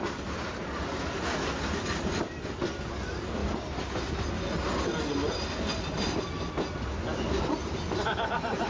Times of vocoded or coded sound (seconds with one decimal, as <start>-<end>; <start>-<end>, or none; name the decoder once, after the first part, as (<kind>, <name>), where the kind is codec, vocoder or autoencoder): none